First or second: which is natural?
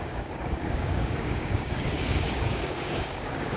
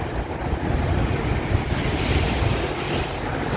second